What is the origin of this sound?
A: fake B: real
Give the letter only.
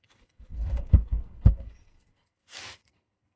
A